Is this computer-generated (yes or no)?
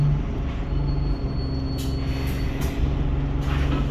no